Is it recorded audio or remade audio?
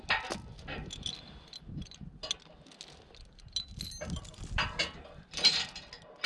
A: recorded